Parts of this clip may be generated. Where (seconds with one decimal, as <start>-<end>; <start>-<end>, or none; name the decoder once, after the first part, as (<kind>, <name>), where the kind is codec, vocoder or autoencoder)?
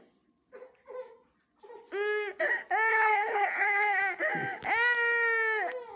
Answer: 2.9-4.0 (codec, HILCodec)